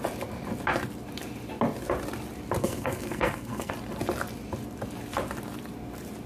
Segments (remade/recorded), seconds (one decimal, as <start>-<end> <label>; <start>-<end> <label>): 0.0-2.6 recorded; 2.6-3.7 remade; 3.7-6.3 recorded